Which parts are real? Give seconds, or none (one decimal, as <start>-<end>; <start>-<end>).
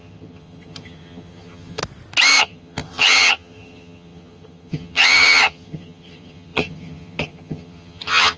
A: 1.8-2.4